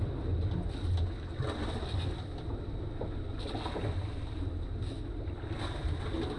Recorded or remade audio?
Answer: recorded